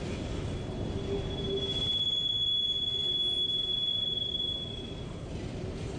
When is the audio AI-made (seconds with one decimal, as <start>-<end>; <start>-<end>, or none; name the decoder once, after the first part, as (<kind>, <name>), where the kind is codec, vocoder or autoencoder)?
none